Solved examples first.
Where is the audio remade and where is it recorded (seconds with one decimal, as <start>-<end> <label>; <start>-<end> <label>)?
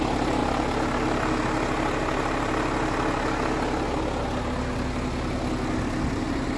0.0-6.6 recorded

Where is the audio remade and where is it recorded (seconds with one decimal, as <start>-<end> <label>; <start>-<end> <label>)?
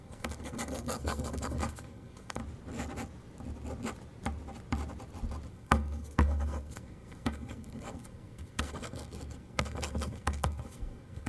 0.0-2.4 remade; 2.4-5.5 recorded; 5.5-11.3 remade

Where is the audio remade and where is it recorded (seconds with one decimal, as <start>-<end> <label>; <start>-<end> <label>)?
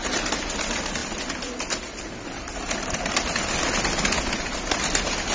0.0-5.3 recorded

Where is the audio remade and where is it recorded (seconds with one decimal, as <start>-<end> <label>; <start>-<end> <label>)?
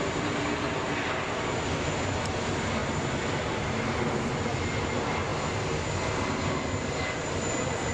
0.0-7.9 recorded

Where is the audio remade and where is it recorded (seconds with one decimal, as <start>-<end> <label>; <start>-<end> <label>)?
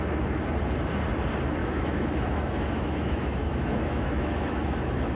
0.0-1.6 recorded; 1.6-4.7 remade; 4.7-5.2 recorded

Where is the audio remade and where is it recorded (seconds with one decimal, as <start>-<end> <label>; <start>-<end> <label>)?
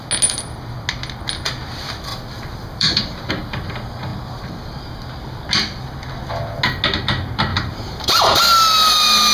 0.0-2.1 recorded; 2.1-3.3 remade; 3.3-7.5 recorded; 7.5-8.4 remade; 8.4-9.3 recorded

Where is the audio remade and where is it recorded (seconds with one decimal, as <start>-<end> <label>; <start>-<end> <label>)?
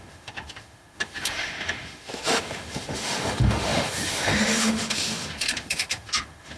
0.0-6.6 remade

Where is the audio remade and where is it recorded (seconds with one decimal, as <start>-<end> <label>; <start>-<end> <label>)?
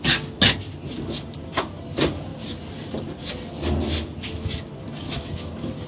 0.0-2.3 recorded; 2.3-3.3 remade; 3.3-5.9 recorded